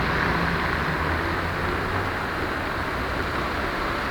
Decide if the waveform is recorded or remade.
recorded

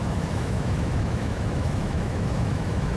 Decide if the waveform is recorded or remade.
remade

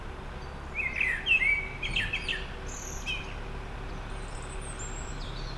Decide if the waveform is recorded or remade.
recorded